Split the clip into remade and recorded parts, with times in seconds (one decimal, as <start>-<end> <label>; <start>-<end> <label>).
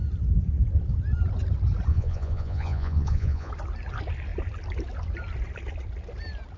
0.0-1.9 recorded; 1.9-3.5 remade; 3.5-6.6 recorded